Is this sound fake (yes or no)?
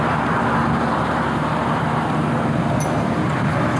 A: no